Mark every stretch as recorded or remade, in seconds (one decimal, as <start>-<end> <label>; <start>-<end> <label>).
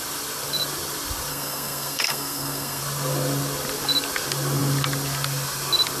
0.0-1.3 recorded; 1.3-2.8 remade; 2.8-6.0 recorded